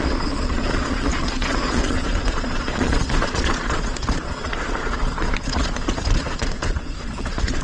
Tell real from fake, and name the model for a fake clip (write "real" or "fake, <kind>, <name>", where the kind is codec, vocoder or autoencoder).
fake, vocoder, Vocos